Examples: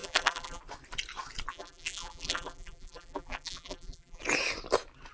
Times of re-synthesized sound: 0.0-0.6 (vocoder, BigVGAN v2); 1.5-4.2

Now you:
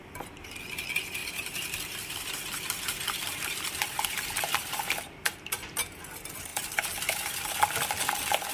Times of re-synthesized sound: 1.2-4.9 (vocoder, BigVGAN v2)

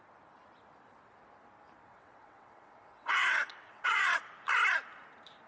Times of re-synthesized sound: 1.9-4.3 (vocoder, WaveNeXt)

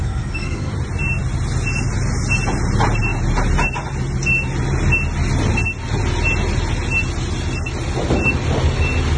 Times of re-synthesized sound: 0.0-0.7 (codec, SNAC)

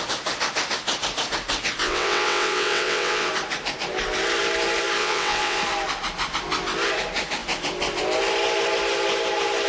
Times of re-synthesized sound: 1.8-3.3 (vocoder, WaveNeXt); 5.0-5.6

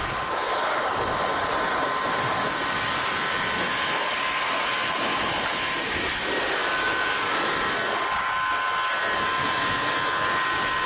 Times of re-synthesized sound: 0.0-3.2 (vocoder, BigVGAN v2); 4.8-7.5